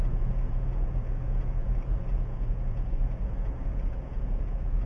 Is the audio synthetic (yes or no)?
yes